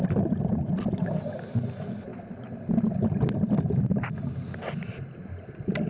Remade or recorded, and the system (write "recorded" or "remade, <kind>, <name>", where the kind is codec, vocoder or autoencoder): recorded